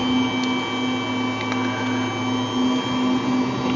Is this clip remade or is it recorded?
recorded